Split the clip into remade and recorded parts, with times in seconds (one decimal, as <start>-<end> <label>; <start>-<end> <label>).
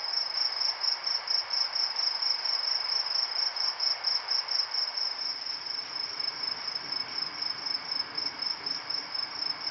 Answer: 0.0-9.7 recorded